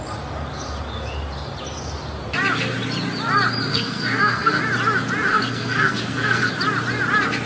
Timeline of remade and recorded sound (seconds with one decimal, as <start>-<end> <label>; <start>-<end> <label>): 0.0-3.7 recorded; 3.7-4.6 remade; 4.6-5.3 recorded; 5.3-6.5 remade; 6.5-7.5 recorded